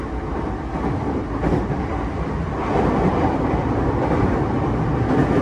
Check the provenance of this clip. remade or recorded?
recorded